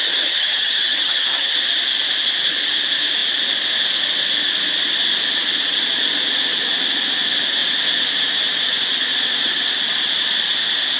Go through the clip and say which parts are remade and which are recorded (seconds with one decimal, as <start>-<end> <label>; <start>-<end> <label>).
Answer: 0.0-1.5 remade; 1.5-11.0 recorded